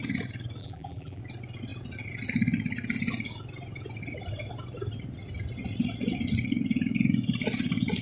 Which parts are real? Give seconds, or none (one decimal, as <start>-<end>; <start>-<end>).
0.0-0.6; 1.2-8.0